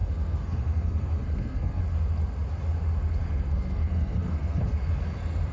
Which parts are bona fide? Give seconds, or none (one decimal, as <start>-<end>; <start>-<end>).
1.8-3.2; 4.6-5.5